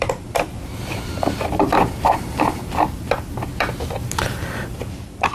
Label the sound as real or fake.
fake